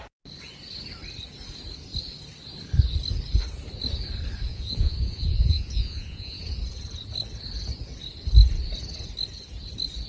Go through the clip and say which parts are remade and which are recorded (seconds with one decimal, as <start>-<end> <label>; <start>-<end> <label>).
0.0-4.5 recorded; 4.5-6.4 remade; 6.4-10.1 recorded